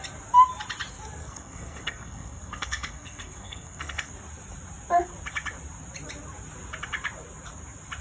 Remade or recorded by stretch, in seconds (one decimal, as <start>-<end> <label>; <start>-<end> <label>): 0.0-1.2 recorded; 1.2-4.1 remade; 4.1-8.0 recorded